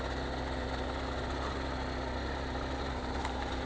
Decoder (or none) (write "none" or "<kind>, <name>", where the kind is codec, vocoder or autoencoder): none